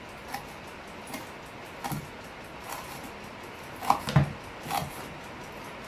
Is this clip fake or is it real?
real